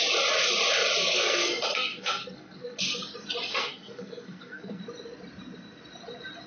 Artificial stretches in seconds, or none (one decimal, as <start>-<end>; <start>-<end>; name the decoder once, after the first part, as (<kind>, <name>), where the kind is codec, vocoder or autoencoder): 1.0-2.8 (codec, SNAC); 3.5-4.8